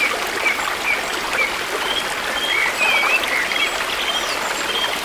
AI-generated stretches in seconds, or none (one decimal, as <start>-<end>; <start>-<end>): none